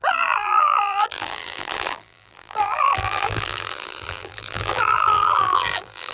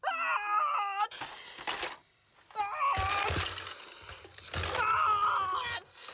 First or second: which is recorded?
second